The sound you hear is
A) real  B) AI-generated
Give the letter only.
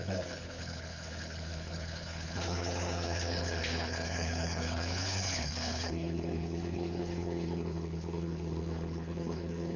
B